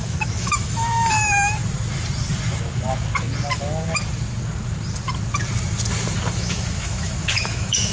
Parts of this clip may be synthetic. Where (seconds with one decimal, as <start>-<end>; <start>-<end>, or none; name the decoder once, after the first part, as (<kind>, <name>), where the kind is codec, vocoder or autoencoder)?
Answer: 0.0-1.6 (autoencoder, DAC-VAE); 6.3-7.9

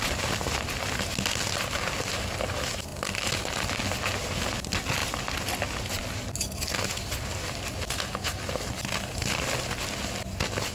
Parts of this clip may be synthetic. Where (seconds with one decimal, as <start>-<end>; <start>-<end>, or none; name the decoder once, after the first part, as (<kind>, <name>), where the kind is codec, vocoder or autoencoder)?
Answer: none

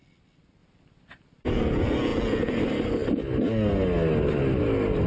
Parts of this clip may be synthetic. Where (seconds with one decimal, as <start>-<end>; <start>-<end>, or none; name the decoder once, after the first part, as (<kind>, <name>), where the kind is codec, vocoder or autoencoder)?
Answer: none

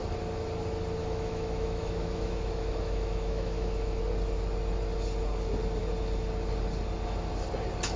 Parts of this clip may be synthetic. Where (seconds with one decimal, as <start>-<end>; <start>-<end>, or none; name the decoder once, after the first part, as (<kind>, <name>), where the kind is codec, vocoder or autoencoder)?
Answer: 1.0-4.0 (autoencoder, DAC-VAE)

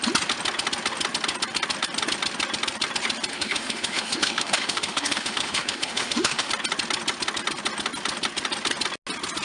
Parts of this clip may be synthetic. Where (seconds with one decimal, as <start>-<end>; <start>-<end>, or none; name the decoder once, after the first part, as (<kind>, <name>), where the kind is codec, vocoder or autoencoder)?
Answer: 3.3-6.5 (autoencoder, DAC-VAE)

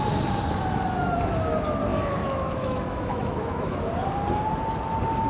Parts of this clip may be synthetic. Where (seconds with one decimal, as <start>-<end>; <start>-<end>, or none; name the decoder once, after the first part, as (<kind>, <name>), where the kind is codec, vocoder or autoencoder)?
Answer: 1.9-3.9 (autoencoder, DAC-VAE)

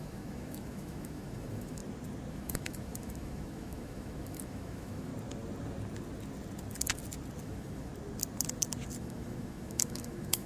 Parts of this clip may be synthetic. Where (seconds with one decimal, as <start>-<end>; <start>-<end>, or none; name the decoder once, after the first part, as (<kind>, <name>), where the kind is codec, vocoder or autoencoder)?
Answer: 0.0-1.8 (autoencoder, DAC-VAE); 2.3-5.1; 7.4-7.9; 9.0-10.5

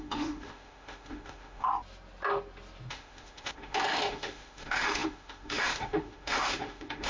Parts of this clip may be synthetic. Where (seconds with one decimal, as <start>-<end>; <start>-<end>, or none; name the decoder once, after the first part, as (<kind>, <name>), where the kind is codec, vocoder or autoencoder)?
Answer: 0.0-1.7 (autoencoder, DAC-VAE); 2.9-7.1